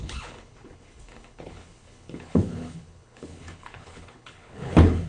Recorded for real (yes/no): no